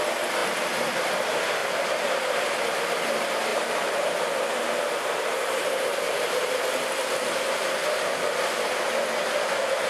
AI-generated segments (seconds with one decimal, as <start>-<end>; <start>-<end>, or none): 1.6-2.4; 3.5-6.6